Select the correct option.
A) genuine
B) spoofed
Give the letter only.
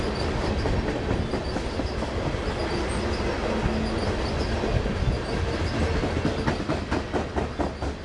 A